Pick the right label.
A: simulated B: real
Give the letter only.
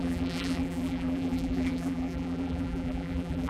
A